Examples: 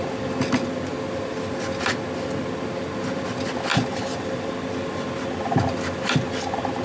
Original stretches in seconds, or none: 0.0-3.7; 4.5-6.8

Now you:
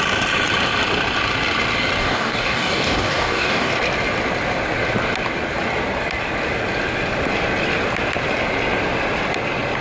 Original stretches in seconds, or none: 0.0-2.0; 3.7-9.8